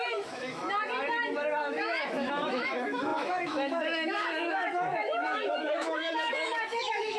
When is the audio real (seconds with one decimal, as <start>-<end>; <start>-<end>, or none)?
0.6-1.6